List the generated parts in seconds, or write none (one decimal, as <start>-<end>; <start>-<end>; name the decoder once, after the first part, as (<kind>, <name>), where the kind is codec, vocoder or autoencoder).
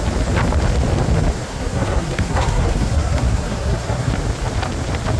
1.5-4.1 (codec, SNAC)